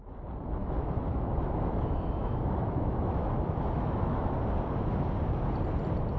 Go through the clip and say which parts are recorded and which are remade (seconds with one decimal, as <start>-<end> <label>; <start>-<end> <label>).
0.0-0.6 recorded; 0.6-4.3 remade; 4.3-6.2 recorded